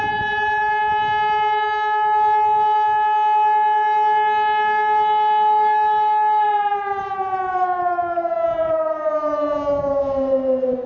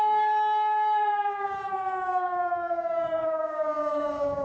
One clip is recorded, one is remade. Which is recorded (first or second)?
first